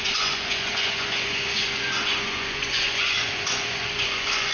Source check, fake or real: fake